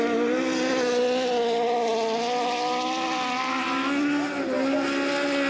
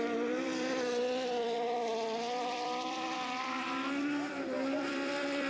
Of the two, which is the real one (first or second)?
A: first